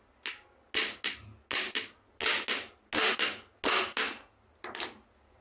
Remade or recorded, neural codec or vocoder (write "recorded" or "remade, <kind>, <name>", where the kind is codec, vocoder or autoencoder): recorded